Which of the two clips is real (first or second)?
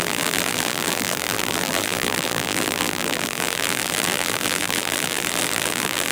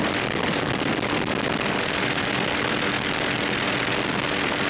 second